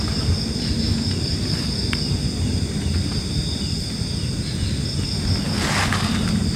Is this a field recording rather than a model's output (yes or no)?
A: yes